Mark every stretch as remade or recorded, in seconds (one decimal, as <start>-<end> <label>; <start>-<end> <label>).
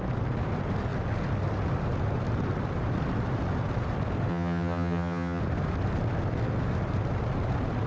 0.0-4.3 recorded; 4.3-5.4 remade; 5.4-7.9 recorded